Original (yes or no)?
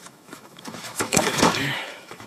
no